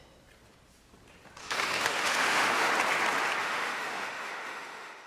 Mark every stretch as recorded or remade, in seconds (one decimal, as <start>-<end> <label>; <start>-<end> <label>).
0.0-1.4 recorded; 1.4-2.7 remade; 2.7-3.4 recorded; 3.4-5.1 remade